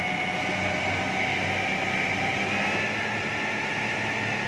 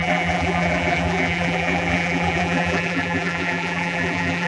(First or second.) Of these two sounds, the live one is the first